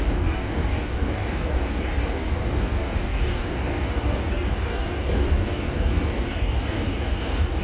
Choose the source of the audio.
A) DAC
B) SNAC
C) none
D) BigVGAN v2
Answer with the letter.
A